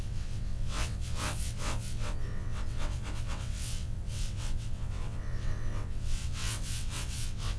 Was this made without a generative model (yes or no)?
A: no